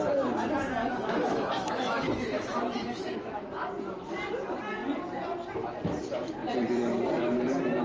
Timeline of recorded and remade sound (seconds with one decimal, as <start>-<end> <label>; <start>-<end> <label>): 0.0-0.8 recorded; 0.8-3.4 remade; 3.4-7.8 recorded